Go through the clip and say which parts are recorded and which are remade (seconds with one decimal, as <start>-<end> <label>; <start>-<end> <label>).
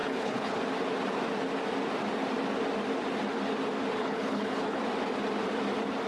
0.0-0.6 remade; 0.6-4.0 recorded; 4.0-4.8 remade; 4.8-6.1 recorded